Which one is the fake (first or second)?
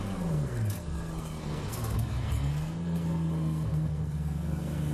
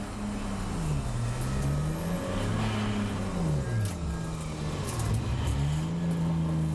first